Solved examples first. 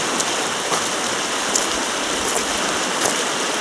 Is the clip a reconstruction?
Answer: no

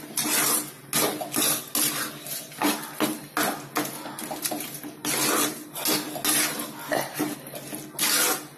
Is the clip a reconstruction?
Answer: no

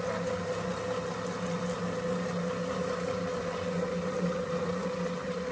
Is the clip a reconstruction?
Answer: no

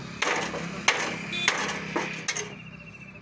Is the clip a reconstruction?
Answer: no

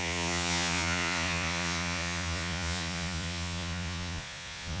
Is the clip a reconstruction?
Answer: yes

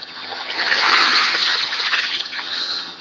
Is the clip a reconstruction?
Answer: yes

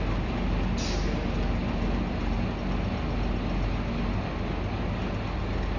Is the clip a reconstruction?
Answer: no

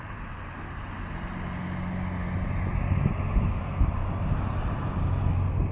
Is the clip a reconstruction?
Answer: no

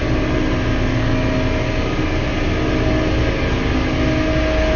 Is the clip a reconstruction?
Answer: no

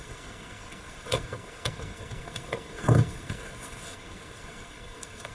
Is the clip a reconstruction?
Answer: yes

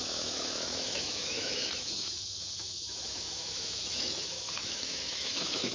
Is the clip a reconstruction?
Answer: yes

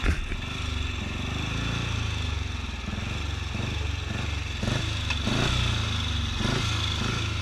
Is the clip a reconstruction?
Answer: no